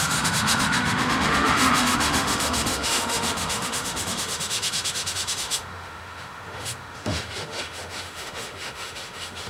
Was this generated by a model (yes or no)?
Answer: yes